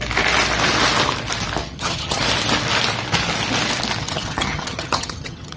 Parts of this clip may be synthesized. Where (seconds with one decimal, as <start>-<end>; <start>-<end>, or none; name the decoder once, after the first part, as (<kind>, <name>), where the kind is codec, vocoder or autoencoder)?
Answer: 1.6-2.2 (vocoder, HiFi-GAN); 4.0-5.6